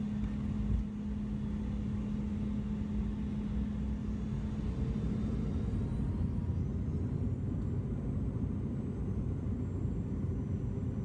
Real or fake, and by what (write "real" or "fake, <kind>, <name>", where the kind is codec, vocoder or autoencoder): real